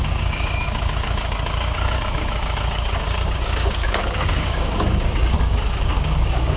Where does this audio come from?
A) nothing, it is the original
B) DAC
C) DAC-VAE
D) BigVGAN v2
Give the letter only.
B